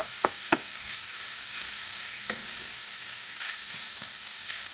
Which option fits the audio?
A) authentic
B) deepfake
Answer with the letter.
B